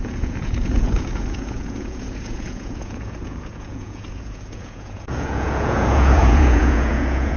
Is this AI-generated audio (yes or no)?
yes